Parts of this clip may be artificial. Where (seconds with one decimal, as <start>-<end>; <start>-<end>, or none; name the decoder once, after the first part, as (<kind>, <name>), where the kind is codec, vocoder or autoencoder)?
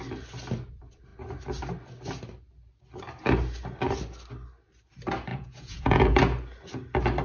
5.3-6.2 (vocoder, Vocos)